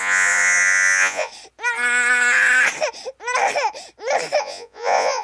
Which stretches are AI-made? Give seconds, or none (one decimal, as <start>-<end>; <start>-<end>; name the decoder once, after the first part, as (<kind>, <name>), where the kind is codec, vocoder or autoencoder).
0.0-1.3 (vocoder, Vocos); 4.4-5.2